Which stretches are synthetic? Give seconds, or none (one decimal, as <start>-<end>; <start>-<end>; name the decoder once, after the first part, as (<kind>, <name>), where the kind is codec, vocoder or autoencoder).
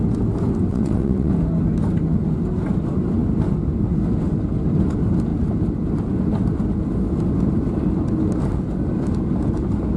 0.7-1.3 (vocoder, WaveNeXt)